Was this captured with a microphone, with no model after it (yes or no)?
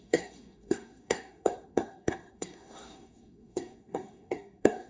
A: no